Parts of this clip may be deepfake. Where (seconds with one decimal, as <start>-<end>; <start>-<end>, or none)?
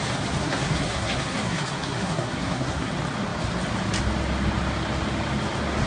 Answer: 0.4-2.9